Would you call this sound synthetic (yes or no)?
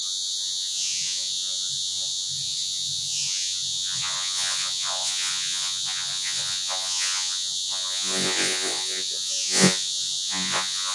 yes